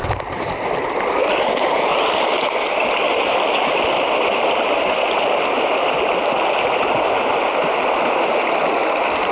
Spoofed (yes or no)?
no